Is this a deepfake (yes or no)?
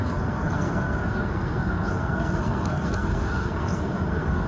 yes